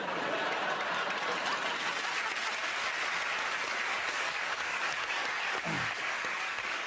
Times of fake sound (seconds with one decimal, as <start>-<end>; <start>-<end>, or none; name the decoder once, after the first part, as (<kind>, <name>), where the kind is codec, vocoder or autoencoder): 3.9-6.9 (codec, DAC)